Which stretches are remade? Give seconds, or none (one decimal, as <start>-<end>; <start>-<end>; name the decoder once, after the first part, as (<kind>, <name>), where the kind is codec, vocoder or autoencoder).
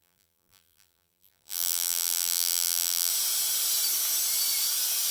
0.0-3.1 (vocoder, BigVGAN v2)